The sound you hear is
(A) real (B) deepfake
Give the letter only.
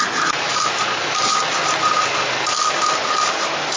A